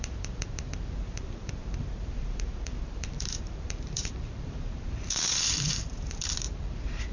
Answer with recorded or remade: remade